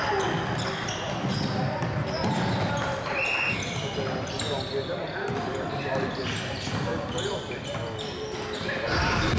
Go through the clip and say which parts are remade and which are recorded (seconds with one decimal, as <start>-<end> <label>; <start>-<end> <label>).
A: 0.0-9.4 recorded